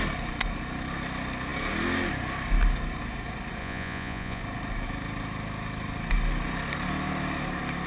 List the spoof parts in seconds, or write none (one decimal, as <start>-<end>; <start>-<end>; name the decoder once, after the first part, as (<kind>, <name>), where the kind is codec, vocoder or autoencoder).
3.6-4.4 (vocoder, Vocos)